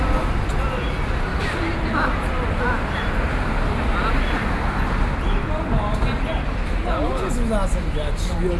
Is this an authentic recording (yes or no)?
yes